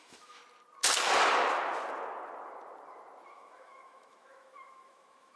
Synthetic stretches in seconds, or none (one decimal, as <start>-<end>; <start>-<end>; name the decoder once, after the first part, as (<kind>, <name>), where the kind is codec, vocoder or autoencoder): 0.0-0.4 (autoencoder, DAC-VAE); 3.3-5.4